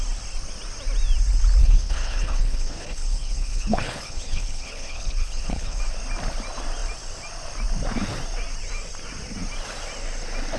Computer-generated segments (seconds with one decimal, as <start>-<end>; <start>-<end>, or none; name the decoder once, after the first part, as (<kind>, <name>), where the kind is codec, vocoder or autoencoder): 1.6-5.8 (codec, HILCodec)

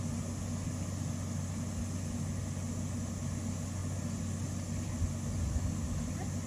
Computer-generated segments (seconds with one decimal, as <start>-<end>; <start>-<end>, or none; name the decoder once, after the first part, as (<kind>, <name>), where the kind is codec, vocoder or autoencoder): none

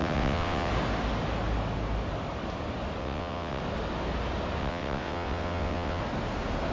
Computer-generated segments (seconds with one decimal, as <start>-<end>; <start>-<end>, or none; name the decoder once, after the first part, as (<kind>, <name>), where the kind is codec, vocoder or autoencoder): 0.0-0.7 (vocoder, WaveNeXt); 3.0-3.6; 4.6-6.0